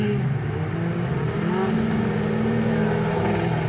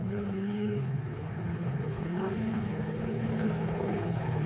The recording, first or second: first